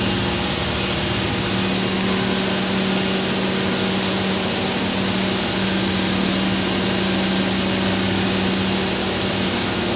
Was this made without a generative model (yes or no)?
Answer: yes